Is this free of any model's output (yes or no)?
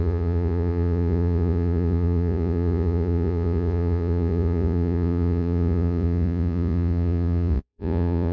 no